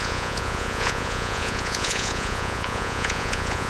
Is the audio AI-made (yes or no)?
yes